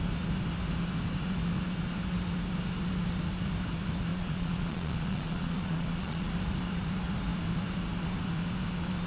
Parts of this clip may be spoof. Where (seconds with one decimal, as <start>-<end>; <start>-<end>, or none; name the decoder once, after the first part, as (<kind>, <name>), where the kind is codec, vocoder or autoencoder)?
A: 4.1-6.3 (vocoder, Vocos)